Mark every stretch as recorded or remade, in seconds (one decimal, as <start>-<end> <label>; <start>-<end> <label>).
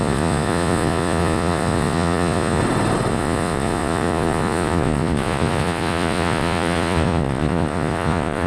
0.0-2.6 remade; 2.6-3.1 recorded; 3.1-8.5 remade